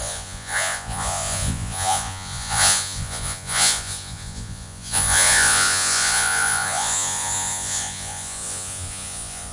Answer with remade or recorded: remade